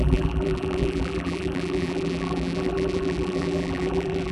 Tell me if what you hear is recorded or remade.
remade